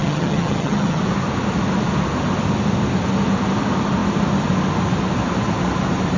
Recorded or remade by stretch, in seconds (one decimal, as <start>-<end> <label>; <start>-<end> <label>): 0.0-1.0 remade; 1.0-6.2 recorded